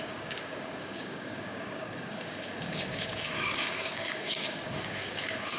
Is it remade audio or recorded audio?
remade